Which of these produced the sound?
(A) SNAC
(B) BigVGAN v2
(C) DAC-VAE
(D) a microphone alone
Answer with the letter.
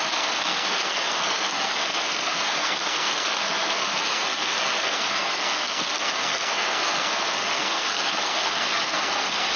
A